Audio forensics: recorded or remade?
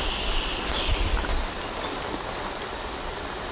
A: recorded